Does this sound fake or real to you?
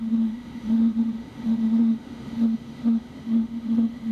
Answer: fake